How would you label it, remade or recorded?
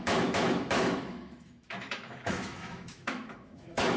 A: remade